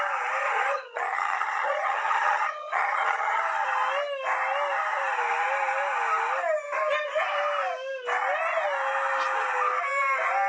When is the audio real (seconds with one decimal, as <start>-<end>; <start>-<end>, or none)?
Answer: 0.0-0.4; 3.4-10.5